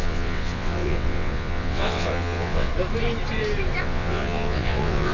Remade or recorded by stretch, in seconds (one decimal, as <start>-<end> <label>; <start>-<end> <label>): 0.0-2.7 remade; 2.7-3.8 recorded; 3.8-5.1 remade